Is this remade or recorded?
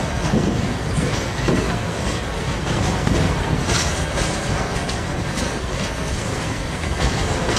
remade